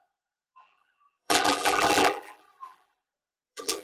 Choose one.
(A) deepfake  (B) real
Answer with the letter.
A